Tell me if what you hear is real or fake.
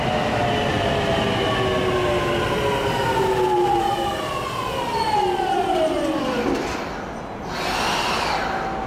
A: real